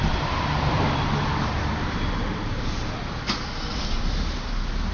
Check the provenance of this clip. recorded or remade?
recorded